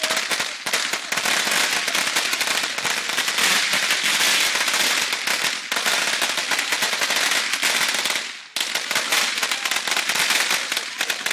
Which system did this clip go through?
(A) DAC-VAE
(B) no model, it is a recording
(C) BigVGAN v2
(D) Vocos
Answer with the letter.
B